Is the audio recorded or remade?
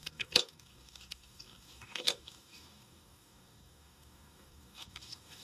remade